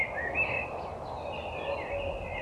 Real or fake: real